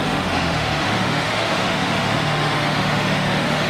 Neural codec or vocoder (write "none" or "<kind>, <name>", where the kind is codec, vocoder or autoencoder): autoencoder, DAC-VAE